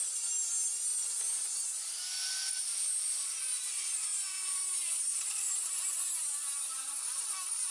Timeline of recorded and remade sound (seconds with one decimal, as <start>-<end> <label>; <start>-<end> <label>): 0.0-7.7 recorded